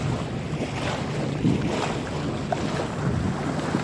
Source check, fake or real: real